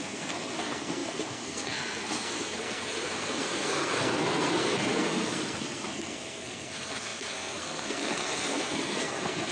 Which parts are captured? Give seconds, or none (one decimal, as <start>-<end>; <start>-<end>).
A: none